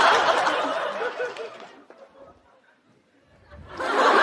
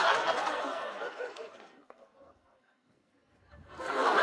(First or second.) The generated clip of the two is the second